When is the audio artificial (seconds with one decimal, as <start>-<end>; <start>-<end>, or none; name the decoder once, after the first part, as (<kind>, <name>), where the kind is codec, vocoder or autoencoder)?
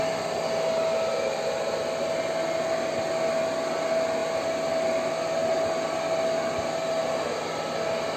none